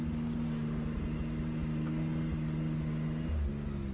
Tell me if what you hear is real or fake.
real